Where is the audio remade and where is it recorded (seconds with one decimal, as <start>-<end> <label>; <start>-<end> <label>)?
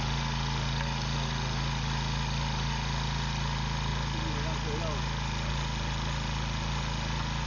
0.0-7.5 recorded